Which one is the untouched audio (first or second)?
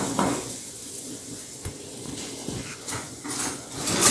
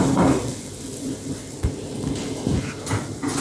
second